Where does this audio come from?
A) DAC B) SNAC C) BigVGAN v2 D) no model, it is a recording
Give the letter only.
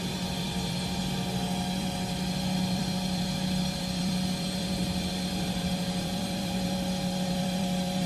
C